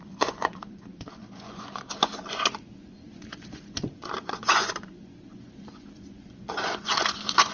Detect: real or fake fake